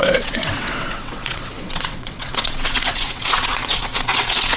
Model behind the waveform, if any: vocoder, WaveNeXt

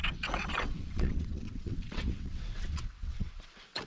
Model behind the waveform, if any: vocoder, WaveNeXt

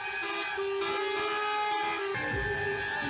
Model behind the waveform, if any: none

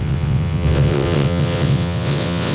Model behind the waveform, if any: vocoder, WaveNeXt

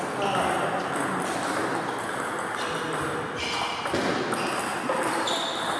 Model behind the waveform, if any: none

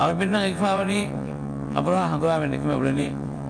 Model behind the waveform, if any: vocoder, WaveNeXt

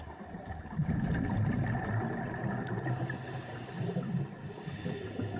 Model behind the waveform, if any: none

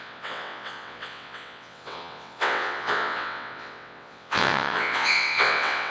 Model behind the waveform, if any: vocoder, WaveNeXt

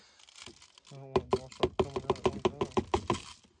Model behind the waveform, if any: none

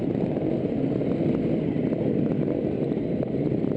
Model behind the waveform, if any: none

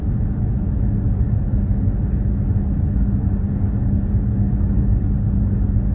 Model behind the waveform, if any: none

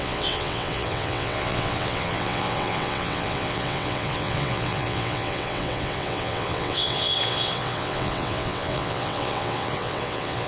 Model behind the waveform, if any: vocoder, WaveNeXt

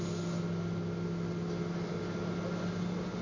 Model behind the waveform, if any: none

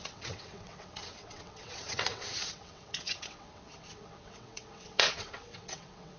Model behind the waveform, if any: vocoder, WaveNeXt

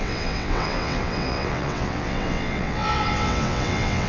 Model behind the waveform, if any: vocoder, WaveNeXt